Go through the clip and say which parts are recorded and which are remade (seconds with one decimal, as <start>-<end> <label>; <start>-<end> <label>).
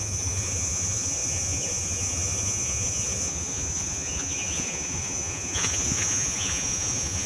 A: 0.0-7.3 remade